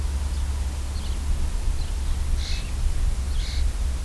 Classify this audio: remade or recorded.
recorded